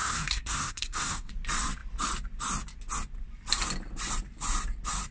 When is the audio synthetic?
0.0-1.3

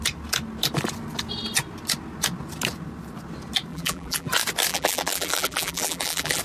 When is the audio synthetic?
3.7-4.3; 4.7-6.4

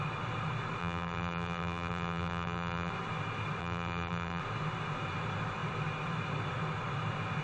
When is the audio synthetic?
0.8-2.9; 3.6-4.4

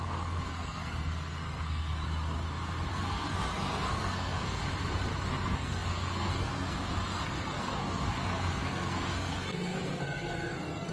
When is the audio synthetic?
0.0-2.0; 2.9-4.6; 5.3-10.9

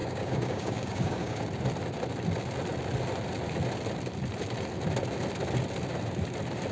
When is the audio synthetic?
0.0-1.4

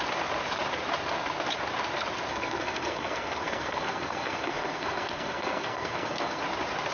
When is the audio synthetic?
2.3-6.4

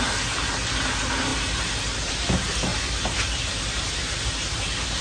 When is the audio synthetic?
none